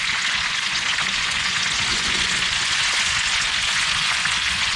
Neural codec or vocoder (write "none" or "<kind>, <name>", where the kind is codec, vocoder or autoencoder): vocoder, Vocos